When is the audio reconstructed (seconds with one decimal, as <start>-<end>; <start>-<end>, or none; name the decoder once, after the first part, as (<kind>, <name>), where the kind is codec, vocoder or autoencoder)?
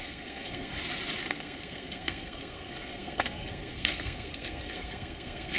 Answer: 0.0-0.7 (codec, SNAC); 1.3-5.6